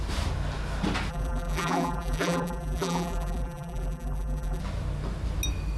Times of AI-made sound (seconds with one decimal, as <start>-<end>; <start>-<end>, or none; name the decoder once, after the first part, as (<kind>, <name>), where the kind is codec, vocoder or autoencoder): 1.1-4.6 (vocoder, BigVGAN v2)